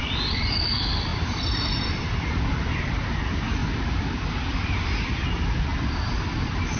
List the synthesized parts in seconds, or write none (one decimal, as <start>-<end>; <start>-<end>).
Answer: 3.6-4.7